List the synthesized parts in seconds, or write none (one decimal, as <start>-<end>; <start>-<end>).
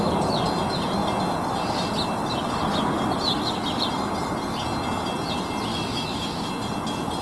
5.7-6.5